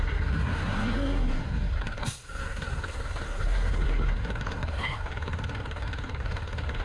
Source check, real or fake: fake